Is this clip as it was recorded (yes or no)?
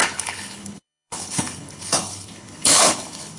no